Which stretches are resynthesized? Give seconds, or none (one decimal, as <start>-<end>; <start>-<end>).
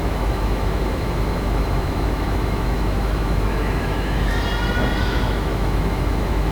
0.0-4.3; 5.0-6.5